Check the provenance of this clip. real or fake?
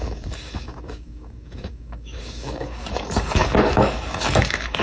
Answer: fake